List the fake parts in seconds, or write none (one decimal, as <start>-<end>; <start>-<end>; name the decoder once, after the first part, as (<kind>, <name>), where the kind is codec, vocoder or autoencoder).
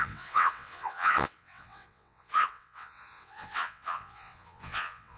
0.0-5.2 (vocoder, WaveNeXt)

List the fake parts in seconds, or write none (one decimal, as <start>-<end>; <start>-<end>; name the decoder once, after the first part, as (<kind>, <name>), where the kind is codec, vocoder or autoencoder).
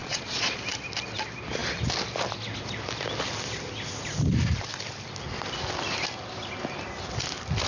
0.0-0.6 (vocoder, Vocos)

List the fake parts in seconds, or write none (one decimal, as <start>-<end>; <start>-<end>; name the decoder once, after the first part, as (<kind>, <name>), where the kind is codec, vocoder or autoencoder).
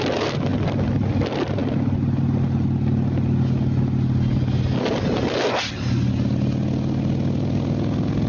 none